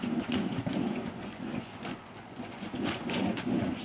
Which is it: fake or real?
fake